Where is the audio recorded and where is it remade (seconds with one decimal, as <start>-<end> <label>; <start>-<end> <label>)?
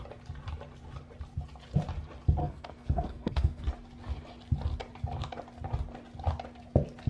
0.0-2.4 recorded; 2.4-3.7 remade; 3.7-7.1 recorded